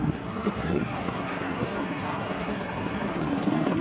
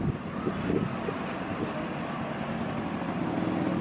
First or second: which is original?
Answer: second